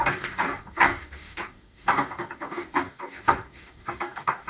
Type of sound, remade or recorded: remade